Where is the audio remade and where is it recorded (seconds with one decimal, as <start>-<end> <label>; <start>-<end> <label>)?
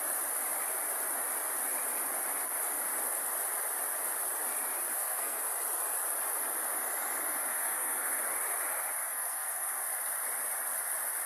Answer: 0.0-4.9 recorded; 4.9-5.4 remade; 5.4-7.5 recorded; 7.5-8.2 remade; 8.2-9.0 recorded; 9.0-9.8 remade; 9.8-11.3 recorded